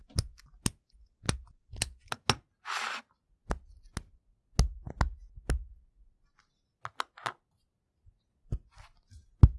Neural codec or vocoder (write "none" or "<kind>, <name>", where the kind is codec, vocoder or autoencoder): none